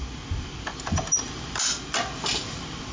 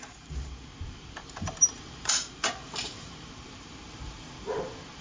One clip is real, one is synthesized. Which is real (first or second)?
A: first